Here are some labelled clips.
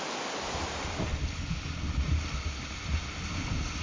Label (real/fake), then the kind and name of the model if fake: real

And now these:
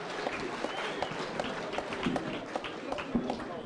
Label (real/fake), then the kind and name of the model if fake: real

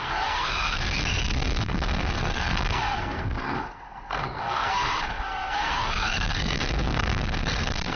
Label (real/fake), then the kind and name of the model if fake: fake, codec, SNAC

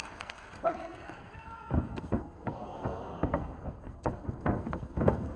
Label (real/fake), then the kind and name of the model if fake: fake, codec, SNAC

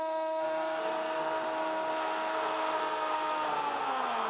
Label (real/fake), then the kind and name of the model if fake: fake, codec, SNAC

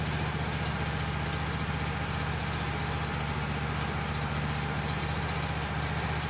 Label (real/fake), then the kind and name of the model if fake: real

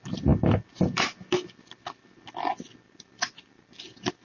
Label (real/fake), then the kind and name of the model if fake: real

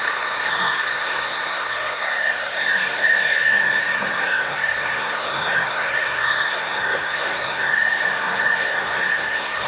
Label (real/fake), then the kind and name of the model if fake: fake, codec, SNAC